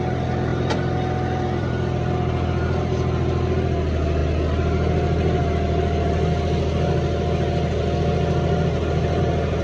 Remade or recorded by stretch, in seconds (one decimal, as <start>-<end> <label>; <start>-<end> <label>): 0.0-0.5 recorded; 0.5-2.1 remade; 2.1-9.6 recorded